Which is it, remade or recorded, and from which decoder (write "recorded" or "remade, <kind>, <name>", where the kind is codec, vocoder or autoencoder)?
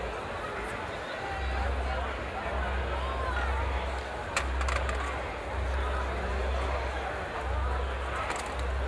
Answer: recorded